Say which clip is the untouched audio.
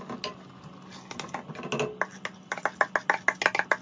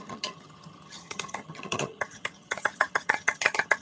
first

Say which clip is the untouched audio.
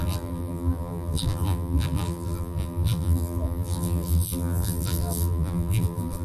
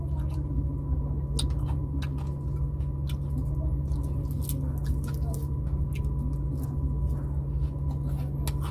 second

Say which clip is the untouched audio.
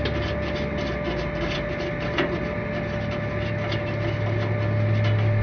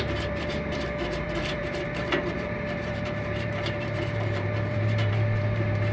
first